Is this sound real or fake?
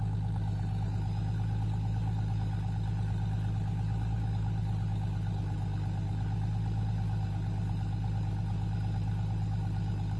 real